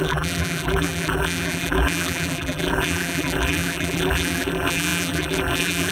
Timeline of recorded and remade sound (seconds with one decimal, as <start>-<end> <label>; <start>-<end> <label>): 0.0-5.9 remade